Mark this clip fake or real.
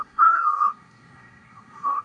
fake